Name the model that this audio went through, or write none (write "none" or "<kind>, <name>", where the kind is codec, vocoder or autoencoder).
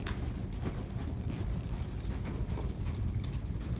none